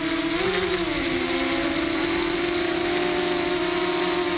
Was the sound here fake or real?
real